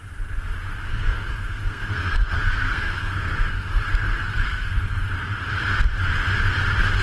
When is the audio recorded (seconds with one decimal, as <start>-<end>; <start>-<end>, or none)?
0.0-0.9; 5.1-7.0